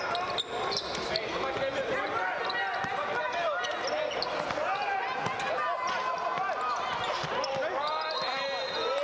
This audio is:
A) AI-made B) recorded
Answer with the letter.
B